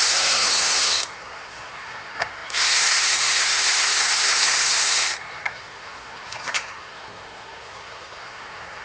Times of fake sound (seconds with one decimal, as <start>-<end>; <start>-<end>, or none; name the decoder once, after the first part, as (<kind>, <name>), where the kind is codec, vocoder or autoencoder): 0.0-8.8 (codec, SNAC)